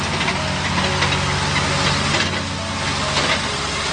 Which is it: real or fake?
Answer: real